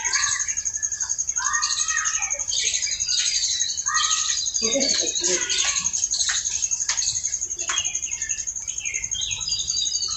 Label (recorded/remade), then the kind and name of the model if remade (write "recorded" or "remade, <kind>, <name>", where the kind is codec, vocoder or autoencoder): remade, vocoder, BigVGAN v2